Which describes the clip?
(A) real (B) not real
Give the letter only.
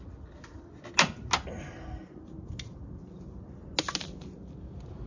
A